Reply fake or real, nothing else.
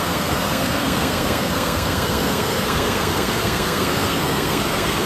fake